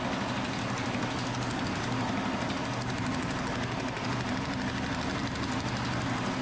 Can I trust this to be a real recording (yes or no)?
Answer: yes